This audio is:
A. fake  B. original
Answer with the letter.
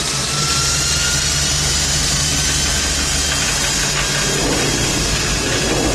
B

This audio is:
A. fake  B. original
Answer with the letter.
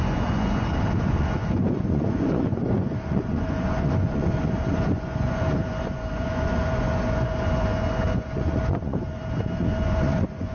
A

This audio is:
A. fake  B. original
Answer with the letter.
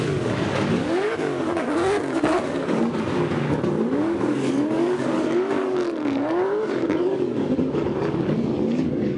A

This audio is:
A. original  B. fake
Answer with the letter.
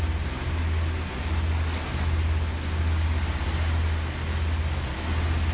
A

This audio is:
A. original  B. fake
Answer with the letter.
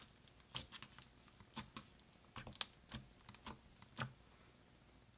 A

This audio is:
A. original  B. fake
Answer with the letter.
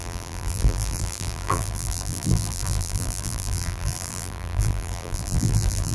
B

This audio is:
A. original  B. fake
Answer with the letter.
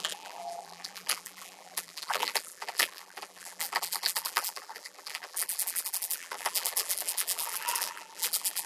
B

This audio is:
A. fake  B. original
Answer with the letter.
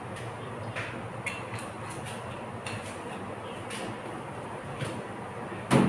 B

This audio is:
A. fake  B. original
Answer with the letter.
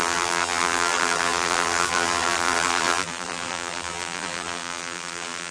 A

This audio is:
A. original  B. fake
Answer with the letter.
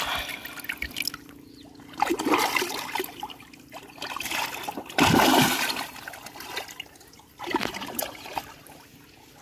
A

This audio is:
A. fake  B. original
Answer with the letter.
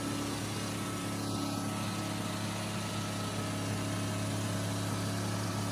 B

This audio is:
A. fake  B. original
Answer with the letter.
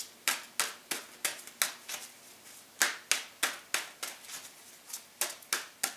B